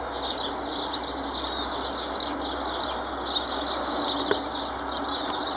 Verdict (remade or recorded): recorded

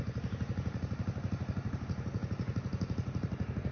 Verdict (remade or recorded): recorded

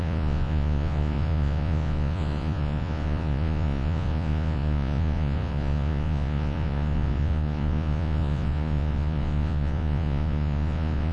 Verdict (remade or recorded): remade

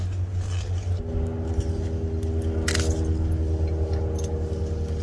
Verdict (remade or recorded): recorded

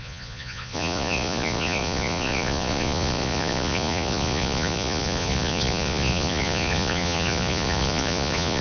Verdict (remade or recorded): remade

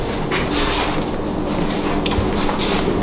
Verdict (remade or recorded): recorded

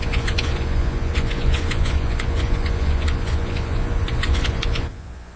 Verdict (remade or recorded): remade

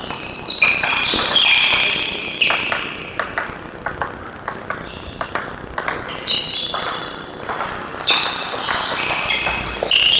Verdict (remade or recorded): recorded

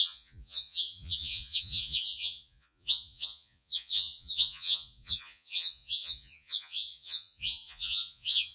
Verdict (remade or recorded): remade